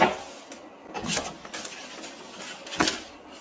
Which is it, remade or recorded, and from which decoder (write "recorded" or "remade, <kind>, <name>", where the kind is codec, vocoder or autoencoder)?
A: recorded